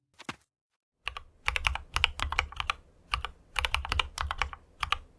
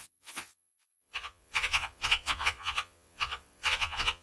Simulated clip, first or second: second